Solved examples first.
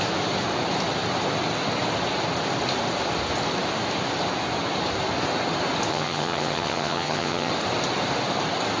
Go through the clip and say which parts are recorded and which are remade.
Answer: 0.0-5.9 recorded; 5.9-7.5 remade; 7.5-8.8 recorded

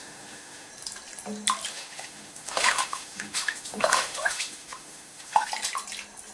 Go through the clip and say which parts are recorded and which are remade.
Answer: 0.0-0.7 remade; 0.7-1.7 recorded; 1.7-5.5 remade; 5.5-6.3 recorded

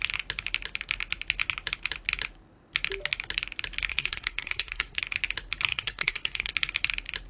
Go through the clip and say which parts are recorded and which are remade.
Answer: 0.0-3.9 recorded; 3.9-5.0 remade; 5.0-5.7 recorded; 5.7-6.5 remade; 6.5-7.3 recorded